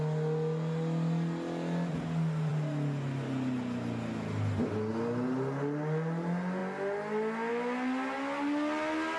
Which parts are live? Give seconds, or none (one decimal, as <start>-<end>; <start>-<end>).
0.0-9.2